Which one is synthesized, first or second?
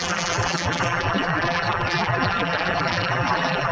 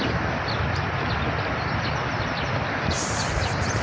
first